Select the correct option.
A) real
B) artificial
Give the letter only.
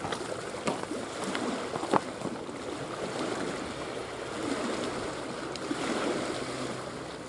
A